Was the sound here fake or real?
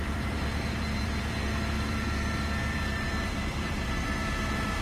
fake